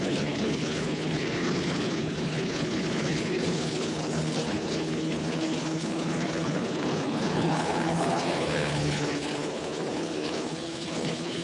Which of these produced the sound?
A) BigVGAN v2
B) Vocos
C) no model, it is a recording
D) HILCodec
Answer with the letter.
D